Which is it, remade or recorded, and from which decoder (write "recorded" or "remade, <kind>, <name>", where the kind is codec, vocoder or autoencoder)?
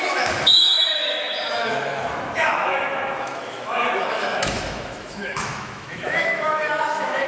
remade, autoencoder, DAC-VAE